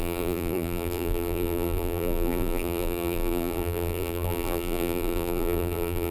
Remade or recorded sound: remade